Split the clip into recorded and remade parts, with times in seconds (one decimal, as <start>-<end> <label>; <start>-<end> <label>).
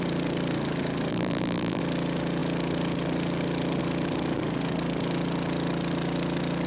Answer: 0.0-1.1 recorded; 1.1-1.8 remade; 1.8-6.7 recorded